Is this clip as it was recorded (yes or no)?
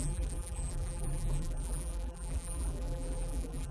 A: no